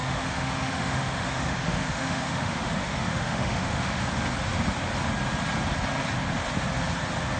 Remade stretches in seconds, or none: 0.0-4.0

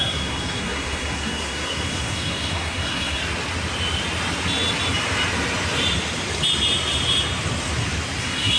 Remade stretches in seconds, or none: 0.0-3.2; 8.2-8.6

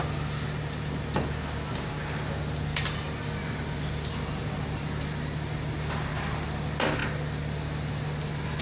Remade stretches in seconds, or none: none